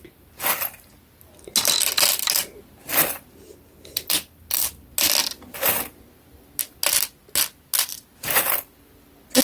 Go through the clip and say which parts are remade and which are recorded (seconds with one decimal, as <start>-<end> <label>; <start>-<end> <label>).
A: 0.0-9.4 recorded